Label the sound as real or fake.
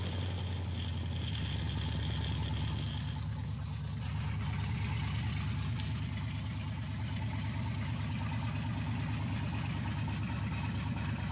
real